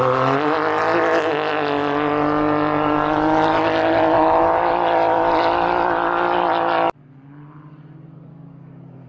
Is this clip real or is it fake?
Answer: real